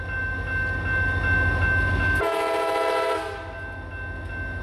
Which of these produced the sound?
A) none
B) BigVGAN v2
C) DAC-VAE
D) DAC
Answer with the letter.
A